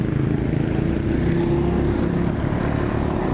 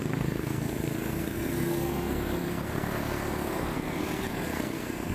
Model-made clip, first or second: second